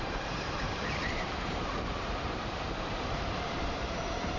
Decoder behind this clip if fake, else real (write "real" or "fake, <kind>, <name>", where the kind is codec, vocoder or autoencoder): fake, vocoder, BigVGAN v2